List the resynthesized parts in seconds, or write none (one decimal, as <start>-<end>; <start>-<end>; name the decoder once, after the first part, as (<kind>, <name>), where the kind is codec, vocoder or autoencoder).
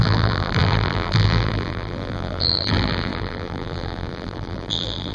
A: 0.0-5.1 (vocoder, BigVGAN v2)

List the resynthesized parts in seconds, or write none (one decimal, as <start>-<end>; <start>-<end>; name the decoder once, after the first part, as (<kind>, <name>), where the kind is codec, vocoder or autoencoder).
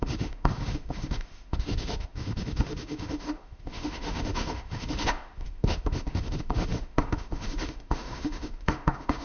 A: 0.0-9.2 (autoencoder, DAC-VAE)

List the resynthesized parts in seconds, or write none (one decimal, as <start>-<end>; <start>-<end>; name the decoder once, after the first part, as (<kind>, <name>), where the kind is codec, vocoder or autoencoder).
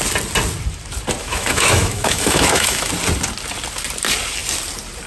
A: 1.2-2.9 (autoencoder, DAC-VAE)